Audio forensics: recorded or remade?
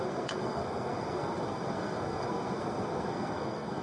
remade